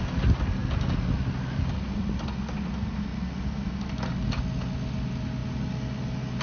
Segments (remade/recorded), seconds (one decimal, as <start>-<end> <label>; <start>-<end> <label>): 0.0-6.4 recorded